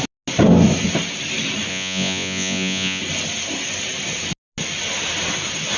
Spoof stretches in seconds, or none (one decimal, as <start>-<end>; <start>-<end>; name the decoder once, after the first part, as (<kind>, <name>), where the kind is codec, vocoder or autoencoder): 1.7-3.0 (vocoder, Vocos)